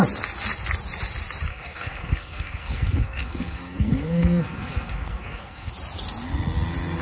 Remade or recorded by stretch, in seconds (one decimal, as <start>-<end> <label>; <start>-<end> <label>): 0.0-1.5 recorded; 1.5-5.7 remade; 5.7-7.0 recorded